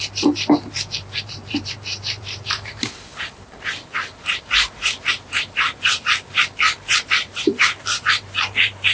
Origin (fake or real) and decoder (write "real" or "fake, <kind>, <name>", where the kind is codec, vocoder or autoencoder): fake, vocoder, BigVGAN v2